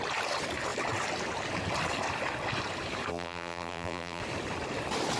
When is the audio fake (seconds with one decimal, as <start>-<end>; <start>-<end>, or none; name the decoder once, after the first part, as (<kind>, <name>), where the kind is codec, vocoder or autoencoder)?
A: 3.1-4.2 (vocoder, BigVGAN v2)